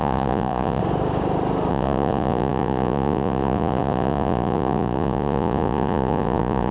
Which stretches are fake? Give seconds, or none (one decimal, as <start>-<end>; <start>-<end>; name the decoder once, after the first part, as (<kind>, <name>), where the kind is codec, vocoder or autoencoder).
0.0-0.8 (vocoder, Vocos); 1.7-6.7